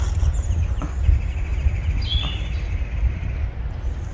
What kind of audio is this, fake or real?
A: real